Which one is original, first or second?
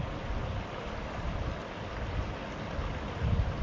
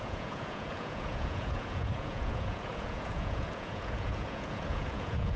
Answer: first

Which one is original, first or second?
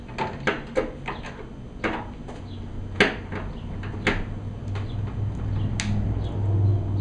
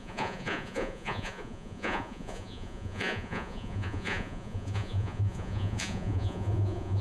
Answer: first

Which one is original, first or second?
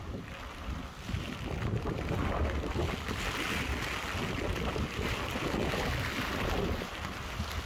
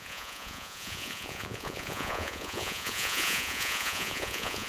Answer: first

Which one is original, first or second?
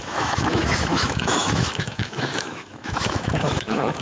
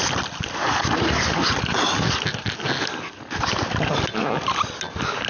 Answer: second